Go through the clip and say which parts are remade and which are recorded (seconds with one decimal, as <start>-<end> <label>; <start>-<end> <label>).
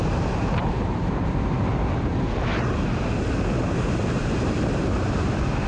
0.0-2.1 remade; 2.1-3.6 recorded; 3.6-5.7 remade